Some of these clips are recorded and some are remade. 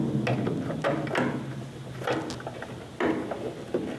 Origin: recorded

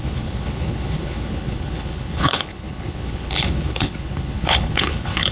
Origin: remade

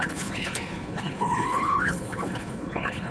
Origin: remade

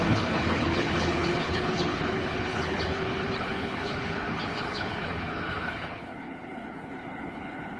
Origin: remade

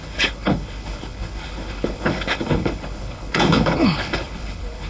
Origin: remade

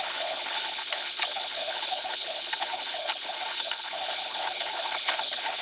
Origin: remade